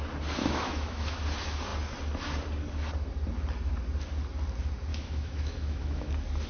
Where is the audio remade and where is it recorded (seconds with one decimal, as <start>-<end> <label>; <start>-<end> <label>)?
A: 0.0-0.4 recorded; 0.4-1.2 remade; 1.2-4.9 recorded; 4.9-6.1 remade; 6.1-6.5 recorded